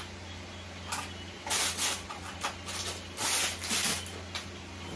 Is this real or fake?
real